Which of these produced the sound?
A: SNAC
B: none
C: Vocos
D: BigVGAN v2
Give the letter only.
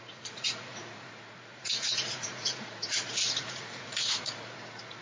C